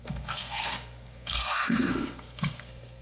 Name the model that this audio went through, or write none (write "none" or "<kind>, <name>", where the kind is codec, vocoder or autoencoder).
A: codec, SNAC